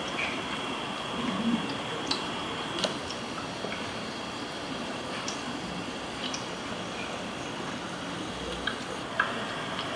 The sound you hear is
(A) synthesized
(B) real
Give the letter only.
B